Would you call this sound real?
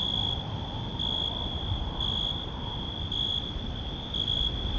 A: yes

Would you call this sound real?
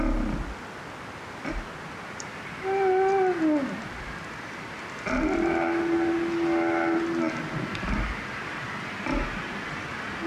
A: yes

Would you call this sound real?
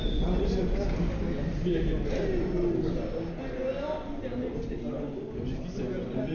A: yes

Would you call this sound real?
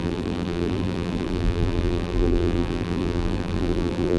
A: no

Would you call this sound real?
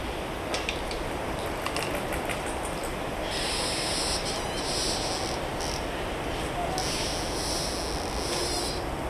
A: yes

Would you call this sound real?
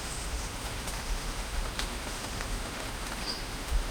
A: no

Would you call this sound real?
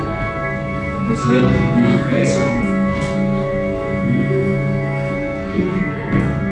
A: no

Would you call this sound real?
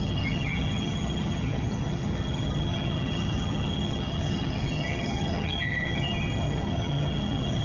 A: no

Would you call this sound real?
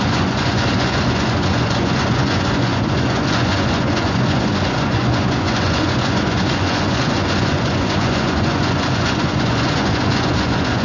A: no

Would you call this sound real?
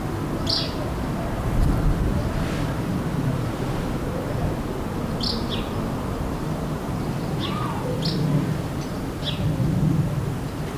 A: yes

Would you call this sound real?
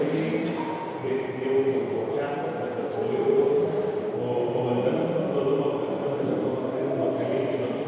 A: yes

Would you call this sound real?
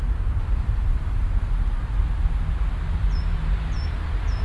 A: yes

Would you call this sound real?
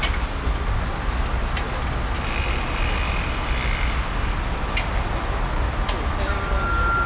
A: yes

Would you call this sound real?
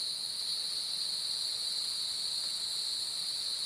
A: yes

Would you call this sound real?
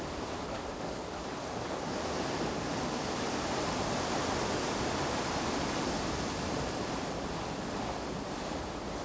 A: yes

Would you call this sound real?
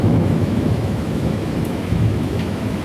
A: no